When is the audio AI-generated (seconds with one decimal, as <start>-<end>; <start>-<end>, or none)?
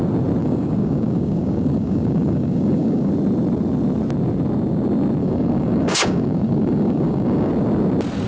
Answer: 0.4-3.1; 5.2-7.5